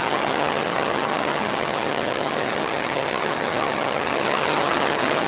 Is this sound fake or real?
fake